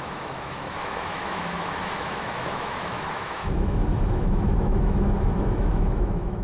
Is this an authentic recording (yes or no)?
no